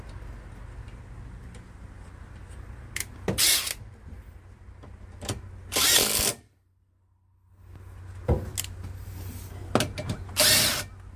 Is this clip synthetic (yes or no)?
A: no